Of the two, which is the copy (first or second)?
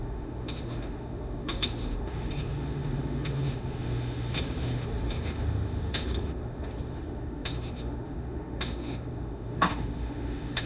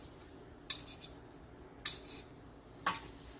first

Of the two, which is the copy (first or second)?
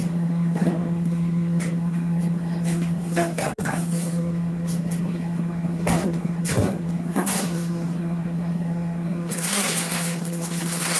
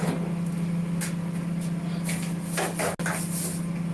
first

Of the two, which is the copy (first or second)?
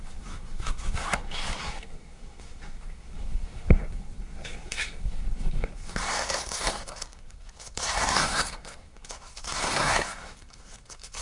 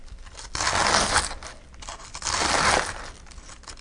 first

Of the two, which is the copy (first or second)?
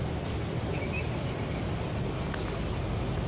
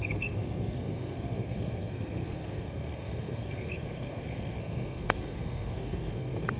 second